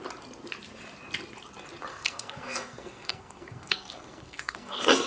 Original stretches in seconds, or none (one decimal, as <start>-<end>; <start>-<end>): 0.0-1.9